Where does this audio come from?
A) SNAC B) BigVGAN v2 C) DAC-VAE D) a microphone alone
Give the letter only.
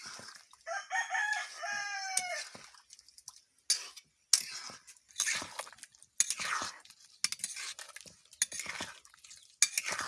D